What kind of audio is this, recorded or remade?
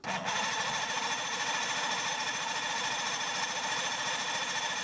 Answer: recorded